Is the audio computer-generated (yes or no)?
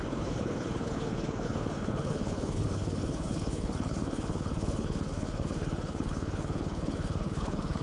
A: yes